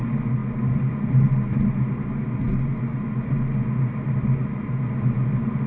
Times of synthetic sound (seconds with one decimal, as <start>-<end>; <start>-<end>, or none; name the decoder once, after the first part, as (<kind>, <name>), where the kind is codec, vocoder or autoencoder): none